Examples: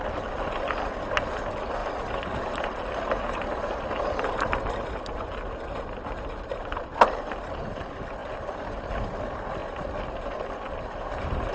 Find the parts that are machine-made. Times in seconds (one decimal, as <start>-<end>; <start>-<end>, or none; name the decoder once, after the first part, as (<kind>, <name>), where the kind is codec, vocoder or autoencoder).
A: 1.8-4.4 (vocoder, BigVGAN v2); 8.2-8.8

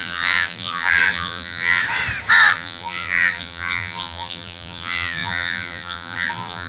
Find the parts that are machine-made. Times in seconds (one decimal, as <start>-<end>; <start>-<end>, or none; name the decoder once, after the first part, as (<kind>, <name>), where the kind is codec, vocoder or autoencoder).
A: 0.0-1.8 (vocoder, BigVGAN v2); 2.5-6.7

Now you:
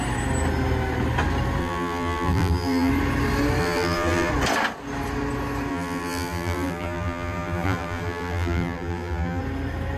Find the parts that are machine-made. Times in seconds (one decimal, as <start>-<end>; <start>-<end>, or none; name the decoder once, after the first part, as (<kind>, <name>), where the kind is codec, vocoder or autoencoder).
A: 1.6-2.9 (vocoder, BigVGAN v2); 3.6-4.3; 5.7-9.4

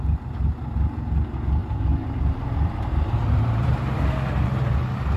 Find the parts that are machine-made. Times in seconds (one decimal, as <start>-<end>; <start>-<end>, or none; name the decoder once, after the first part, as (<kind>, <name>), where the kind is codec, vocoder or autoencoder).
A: 1.6-4.7 (vocoder, BigVGAN v2)

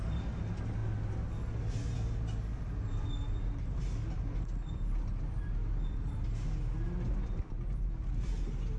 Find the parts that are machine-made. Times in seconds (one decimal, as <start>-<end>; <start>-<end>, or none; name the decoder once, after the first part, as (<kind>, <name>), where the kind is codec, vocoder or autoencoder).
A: none